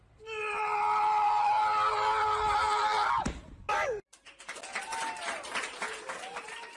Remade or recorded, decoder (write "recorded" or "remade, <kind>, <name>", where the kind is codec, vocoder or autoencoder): recorded